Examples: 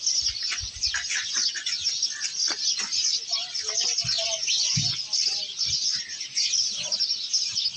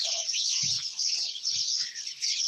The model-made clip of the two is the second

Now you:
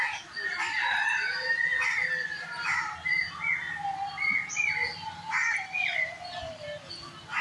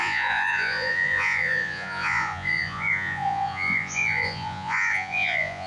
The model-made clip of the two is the second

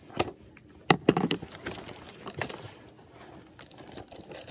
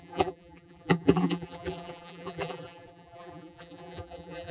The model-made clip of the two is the second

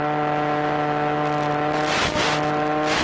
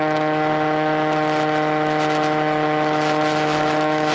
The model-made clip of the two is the second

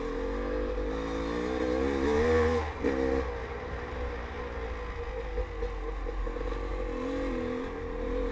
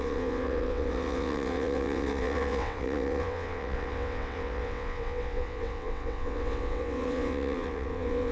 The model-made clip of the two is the second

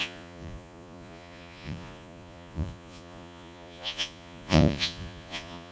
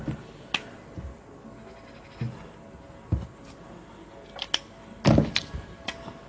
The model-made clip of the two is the first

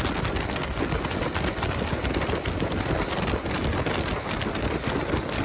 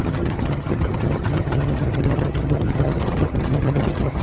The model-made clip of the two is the second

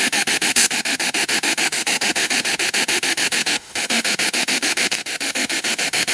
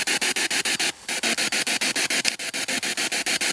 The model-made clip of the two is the first